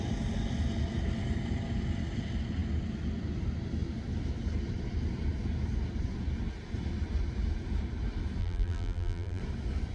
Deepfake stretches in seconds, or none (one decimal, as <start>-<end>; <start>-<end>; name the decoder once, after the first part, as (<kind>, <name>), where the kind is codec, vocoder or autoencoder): 8.4-9.4 (vocoder, BigVGAN v2)